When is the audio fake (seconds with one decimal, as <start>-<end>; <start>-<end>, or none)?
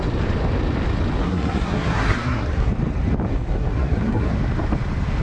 1.2-2.7; 3.3-4.3